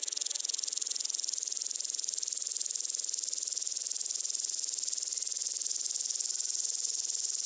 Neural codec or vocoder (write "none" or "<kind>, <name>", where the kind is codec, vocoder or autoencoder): none